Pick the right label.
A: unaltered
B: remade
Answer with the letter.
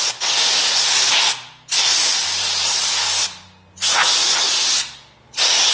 A